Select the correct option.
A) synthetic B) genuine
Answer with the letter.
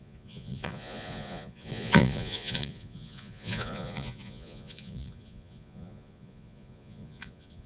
A